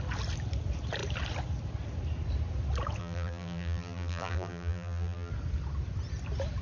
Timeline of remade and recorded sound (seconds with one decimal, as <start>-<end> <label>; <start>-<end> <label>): 0.0-3.0 recorded; 3.0-5.3 remade; 5.3-6.6 recorded